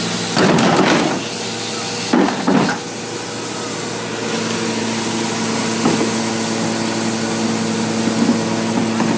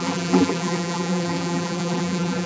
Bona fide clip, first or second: first